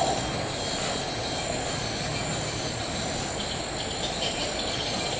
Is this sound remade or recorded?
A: recorded